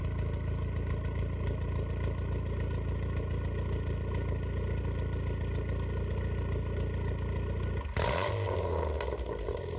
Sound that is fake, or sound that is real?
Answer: real